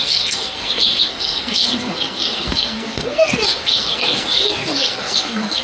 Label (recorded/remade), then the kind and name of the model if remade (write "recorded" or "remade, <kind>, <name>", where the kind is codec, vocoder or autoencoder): remade, codec, SNAC